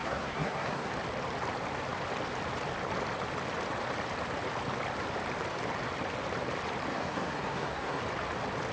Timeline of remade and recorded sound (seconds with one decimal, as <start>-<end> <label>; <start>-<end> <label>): 0.0-0.9 remade; 0.9-6.9 recorded; 6.9-8.0 remade; 8.0-8.7 recorded